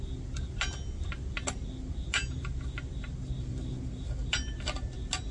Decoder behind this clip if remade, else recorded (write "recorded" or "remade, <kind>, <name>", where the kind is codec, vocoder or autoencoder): recorded